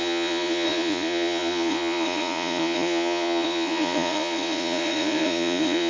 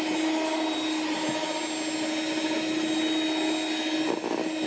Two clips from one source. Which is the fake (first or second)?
first